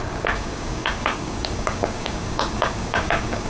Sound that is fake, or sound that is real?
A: fake